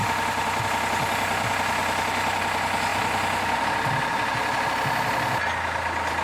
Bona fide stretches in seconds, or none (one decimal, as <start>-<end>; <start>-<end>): 0.6-1.8; 2.4-2.9; 4.7-6.2